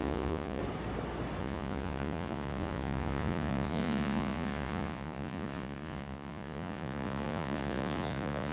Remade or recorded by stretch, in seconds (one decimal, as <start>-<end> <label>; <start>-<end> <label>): 0.0-0.6 remade; 0.6-1.4 recorded; 1.4-8.5 remade